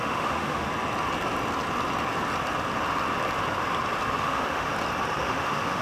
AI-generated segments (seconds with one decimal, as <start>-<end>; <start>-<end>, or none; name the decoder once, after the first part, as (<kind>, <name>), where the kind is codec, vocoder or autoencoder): 0.0-0.7 (autoencoder, DAC-VAE); 4.2-4.7; 5.2-5.8